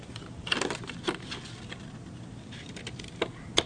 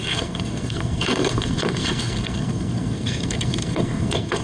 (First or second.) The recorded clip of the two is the first